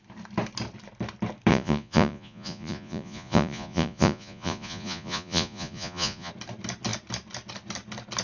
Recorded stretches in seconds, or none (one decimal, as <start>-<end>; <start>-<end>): 0.0-1.5; 6.3-8.2